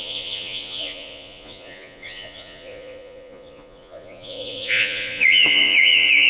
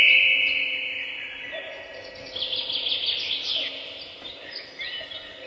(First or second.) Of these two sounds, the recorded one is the second